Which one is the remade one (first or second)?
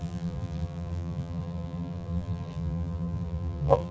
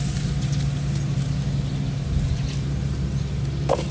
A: first